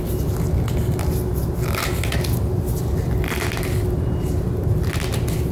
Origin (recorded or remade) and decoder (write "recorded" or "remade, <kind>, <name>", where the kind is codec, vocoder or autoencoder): recorded